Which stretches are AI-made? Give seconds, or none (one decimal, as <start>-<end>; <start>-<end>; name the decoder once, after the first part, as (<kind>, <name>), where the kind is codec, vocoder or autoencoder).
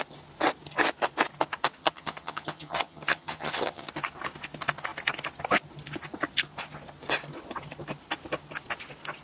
1.8-3.9 (vocoder, HiFi-GAN)